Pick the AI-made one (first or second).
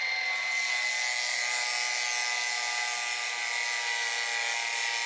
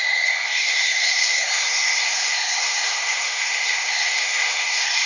second